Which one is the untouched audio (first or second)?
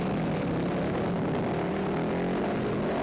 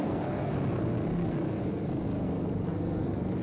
first